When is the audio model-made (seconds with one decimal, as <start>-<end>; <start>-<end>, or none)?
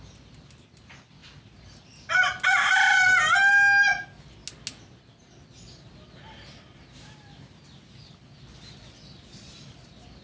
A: none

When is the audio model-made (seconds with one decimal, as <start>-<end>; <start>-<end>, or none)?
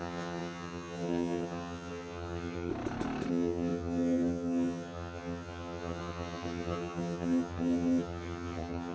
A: 0.0-2.7; 3.3-8.9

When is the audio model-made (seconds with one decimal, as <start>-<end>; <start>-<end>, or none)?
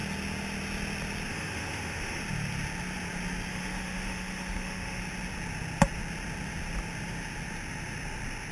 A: 1.3-2.2; 3.5-5.0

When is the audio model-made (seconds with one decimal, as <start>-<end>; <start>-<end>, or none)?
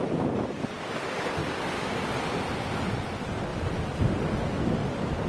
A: 1.4-2.3; 3.5-4.6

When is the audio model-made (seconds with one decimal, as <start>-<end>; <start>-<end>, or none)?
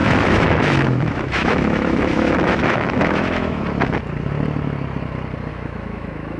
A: 0.0-3.6; 5.5-6.4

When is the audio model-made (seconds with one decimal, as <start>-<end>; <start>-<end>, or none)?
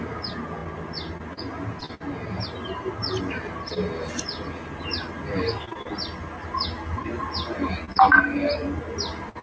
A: none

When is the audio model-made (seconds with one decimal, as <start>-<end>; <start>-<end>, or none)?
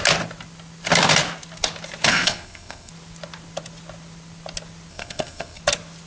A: 2.1-2.9; 4.9-5.6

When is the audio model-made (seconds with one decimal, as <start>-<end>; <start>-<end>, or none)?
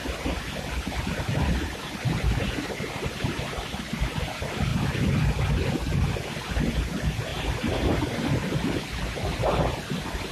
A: none